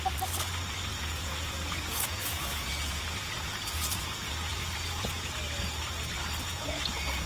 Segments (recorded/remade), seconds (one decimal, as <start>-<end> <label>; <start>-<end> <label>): 0.0-0.9 recorded; 0.9-5.3 remade; 5.3-6.5 recorded; 6.5-7.3 remade